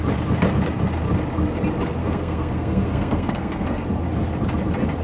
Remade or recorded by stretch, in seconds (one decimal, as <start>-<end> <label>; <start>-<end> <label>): 0.0-2.0 recorded; 2.0-3.8 remade; 3.8-5.0 recorded